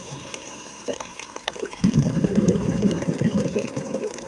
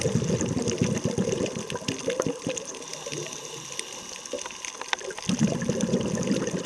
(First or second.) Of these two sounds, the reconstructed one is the first